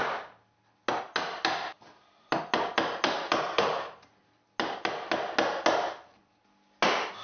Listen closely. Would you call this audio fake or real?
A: real